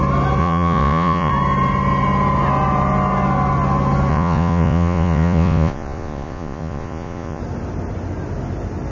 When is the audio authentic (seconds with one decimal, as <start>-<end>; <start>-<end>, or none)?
0.0-0.4; 1.3-4.1; 7.4-8.9